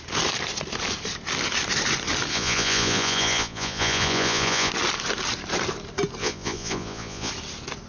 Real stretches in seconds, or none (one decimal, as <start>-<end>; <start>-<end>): 0.0-2.3; 4.7-6.2; 7.3-7.9